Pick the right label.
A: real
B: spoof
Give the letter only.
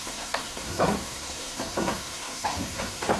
B